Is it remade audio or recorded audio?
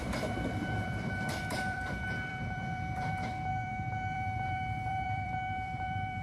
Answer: remade